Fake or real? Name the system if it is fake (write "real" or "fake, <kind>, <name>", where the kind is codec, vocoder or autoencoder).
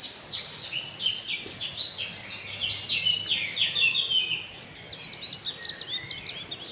real